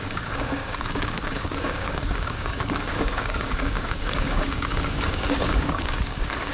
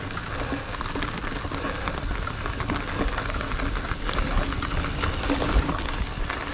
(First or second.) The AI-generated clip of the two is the first